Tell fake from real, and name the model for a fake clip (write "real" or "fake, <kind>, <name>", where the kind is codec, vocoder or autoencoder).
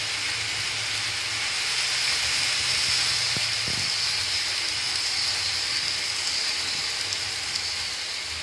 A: real